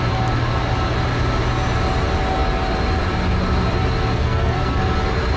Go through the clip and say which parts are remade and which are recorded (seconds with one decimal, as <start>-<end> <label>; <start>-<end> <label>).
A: 0.0-4.1 recorded; 4.1-4.8 remade; 4.8-5.4 recorded